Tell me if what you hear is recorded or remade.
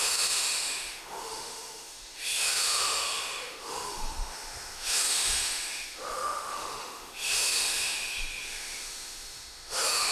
remade